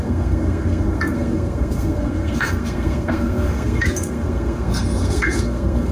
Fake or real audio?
fake